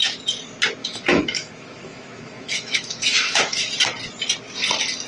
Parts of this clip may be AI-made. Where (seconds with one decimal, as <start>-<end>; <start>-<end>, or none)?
0.8-3.7

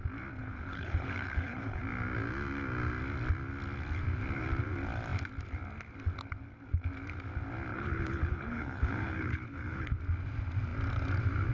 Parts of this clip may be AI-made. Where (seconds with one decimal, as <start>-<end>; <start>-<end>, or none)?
0.4-1.8; 7.7-10.0

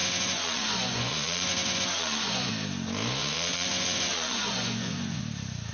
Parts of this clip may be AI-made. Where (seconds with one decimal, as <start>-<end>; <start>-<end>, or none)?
0.0-2.5; 3.2-5.2

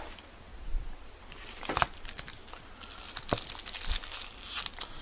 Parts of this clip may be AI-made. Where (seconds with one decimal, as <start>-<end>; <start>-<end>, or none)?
0.5-1.1